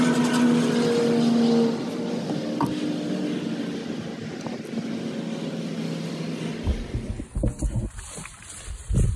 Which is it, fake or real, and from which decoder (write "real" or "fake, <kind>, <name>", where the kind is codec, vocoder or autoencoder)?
real